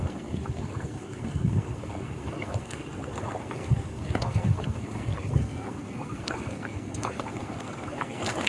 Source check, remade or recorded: remade